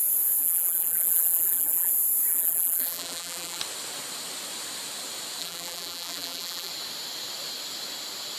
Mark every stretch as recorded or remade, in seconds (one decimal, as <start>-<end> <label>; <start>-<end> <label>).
0.0-0.4 recorded; 0.4-1.9 remade; 1.9-2.3 recorded; 2.3-3.6 remade; 3.6-5.4 recorded; 5.4-6.7 remade; 6.7-8.4 recorded